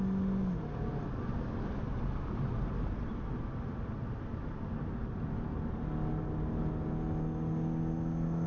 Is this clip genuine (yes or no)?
yes